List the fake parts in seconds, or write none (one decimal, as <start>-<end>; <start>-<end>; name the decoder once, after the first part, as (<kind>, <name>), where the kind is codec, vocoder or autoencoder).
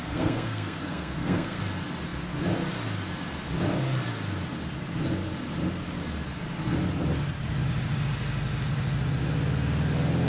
0.0-1.6 (codec, SNAC)